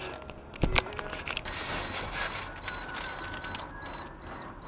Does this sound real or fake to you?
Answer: real